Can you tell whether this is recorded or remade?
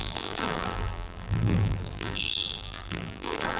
remade